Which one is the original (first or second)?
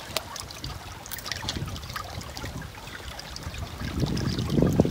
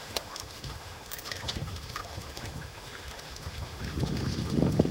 first